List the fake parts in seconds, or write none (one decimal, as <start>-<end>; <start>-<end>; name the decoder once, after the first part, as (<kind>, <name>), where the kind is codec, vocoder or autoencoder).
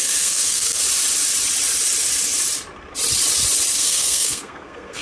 0.0-0.8 (codec, SNAC); 3.8-5.0